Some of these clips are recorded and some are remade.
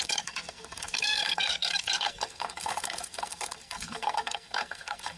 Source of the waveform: remade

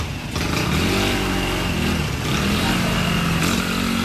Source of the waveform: recorded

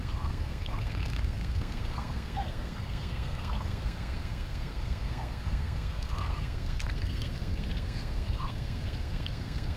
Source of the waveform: remade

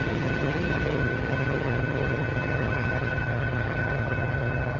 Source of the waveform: remade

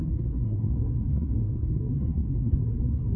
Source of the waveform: remade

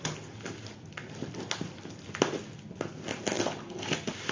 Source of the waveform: recorded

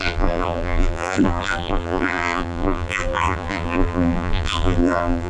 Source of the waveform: remade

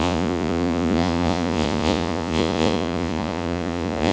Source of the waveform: remade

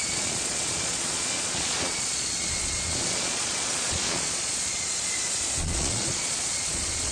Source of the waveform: remade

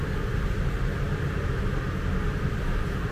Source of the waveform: recorded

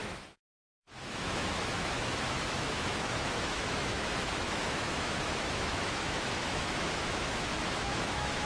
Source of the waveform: remade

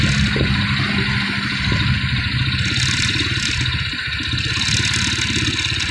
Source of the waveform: recorded